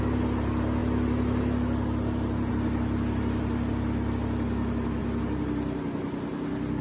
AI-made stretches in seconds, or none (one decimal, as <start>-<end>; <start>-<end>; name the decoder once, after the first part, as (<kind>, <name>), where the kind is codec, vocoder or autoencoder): none